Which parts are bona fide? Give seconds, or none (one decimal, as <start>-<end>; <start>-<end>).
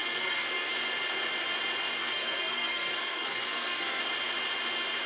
0.7-2.0; 4.0-5.1